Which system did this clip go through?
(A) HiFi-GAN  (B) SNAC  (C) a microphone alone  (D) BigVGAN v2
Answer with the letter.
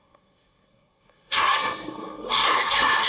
B